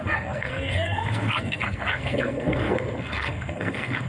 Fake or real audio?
fake